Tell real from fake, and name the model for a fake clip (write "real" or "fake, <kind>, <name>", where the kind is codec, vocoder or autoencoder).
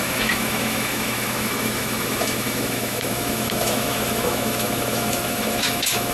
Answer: fake, autoencoder, DAC-VAE